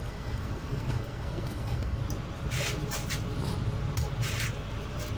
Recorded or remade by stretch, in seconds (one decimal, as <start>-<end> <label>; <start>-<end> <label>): 0.0-2.0 remade; 2.0-5.2 recorded